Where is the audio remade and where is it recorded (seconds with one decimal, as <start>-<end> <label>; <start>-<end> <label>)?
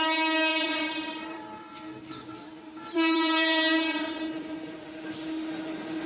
0.0-0.5 recorded; 0.5-4.2 remade; 4.2-6.1 recorded